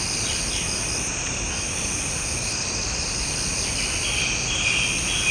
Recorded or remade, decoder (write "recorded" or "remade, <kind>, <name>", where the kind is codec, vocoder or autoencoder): recorded